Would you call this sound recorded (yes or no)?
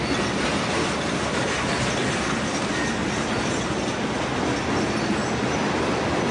yes